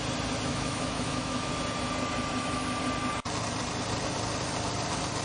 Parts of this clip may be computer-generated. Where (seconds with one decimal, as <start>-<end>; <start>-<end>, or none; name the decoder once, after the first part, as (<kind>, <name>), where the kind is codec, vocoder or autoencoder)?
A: 0.5-1.5 (autoencoder, DAC-VAE)